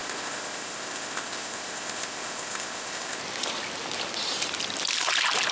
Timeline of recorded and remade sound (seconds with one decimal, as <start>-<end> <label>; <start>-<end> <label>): 0.0-3.2 remade; 3.2-5.5 recorded